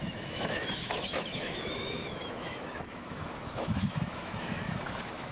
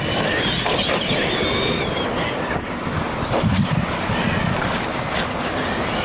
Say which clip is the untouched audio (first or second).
second